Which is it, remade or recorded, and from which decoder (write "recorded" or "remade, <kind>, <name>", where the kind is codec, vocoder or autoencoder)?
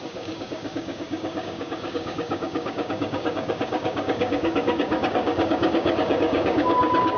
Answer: remade, codec, DAC